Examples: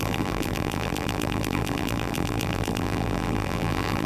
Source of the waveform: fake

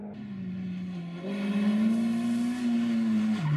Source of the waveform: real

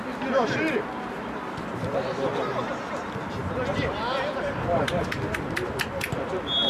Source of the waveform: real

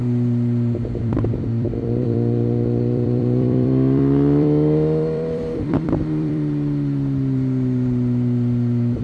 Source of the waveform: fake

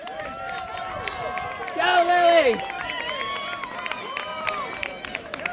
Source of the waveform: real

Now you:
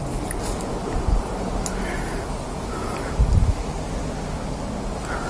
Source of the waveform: real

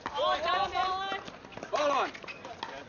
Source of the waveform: real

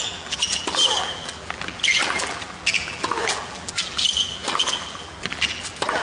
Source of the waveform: fake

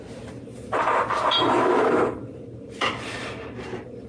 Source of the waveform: fake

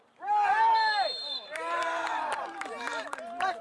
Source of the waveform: fake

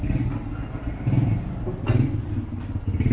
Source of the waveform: real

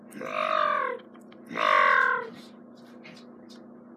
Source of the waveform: real